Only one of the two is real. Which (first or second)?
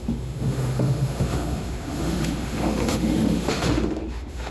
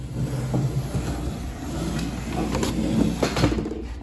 second